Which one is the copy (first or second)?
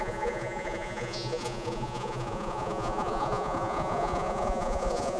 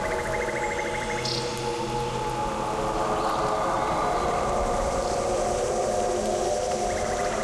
first